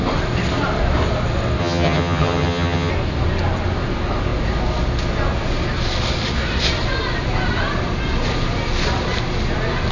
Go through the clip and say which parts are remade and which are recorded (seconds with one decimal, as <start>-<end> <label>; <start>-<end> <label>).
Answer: 0.0-1.6 recorded; 1.6-2.9 remade; 2.9-9.9 recorded